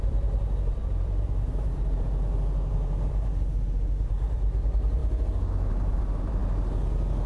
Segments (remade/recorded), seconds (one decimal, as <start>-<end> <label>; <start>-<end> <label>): 0.0-5.0 remade; 5.0-5.7 recorded; 5.7-6.4 remade; 6.4-7.3 recorded